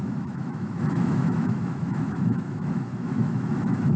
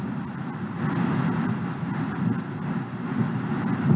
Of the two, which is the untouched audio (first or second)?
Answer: second